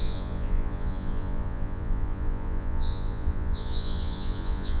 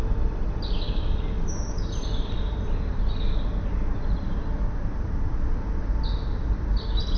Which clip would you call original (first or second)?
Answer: second